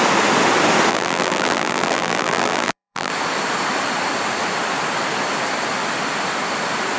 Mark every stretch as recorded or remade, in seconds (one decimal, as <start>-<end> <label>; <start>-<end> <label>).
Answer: 0.0-0.9 recorded; 0.9-3.1 remade; 3.1-7.0 recorded